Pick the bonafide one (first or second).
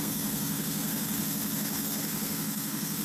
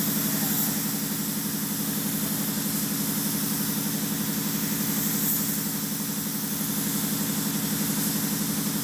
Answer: second